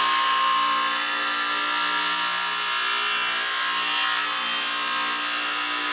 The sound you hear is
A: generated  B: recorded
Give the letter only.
B